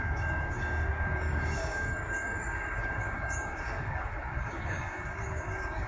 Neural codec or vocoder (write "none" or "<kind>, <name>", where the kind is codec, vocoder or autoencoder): codec, DAC